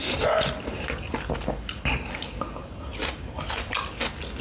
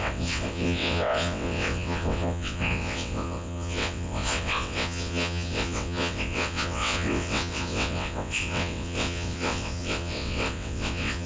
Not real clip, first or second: second